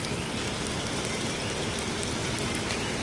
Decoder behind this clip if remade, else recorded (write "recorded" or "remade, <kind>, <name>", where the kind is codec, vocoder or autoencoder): recorded